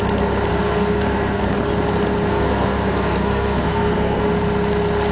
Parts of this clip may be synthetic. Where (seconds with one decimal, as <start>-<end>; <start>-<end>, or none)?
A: 0.5-1.4; 2.3-4.2